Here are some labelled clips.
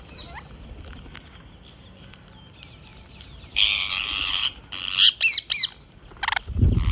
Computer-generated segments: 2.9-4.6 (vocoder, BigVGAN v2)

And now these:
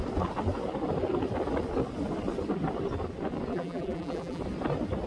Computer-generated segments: 3.5-4.4 (vocoder, BigVGAN v2)

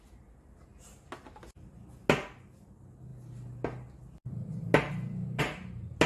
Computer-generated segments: none

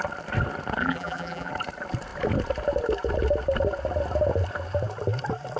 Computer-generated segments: 0.8-1.5 (vocoder, BigVGAN v2)